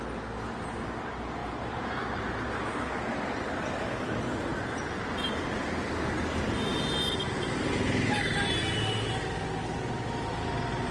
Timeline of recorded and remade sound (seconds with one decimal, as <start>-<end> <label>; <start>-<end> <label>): 0.0-1.4 recorded; 1.4-2.3 remade; 2.3-10.9 recorded